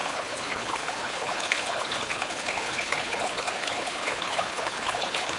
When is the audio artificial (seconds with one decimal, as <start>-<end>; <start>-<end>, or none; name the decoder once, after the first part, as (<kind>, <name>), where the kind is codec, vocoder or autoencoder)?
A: 0.0-5.4 (codec, HILCodec)